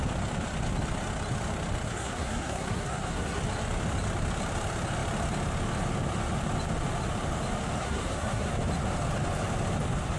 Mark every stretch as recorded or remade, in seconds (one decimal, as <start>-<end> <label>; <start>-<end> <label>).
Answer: 0.0-1.9 recorded; 1.9-3.4 remade; 3.4-7.8 recorded; 7.8-8.5 remade; 8.5-10.2 recorded